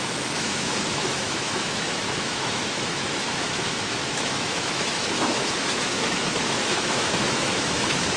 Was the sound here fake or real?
fake